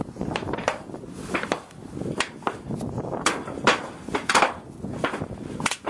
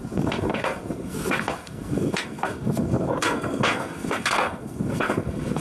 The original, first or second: first